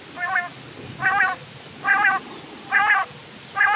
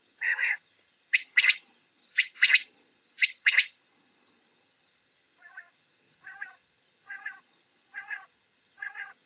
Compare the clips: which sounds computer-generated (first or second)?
second